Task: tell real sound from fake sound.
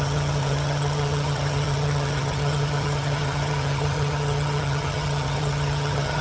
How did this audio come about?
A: fake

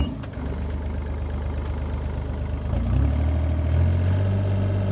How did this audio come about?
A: real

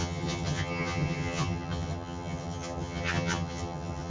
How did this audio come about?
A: fake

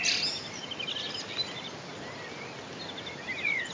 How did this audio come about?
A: real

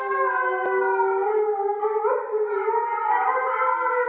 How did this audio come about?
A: real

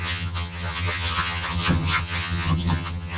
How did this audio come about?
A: fake